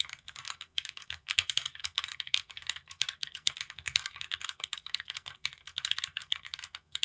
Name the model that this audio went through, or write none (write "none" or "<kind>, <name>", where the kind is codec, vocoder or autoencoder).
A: codec, SNAC